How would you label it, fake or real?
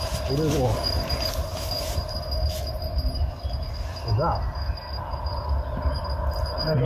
real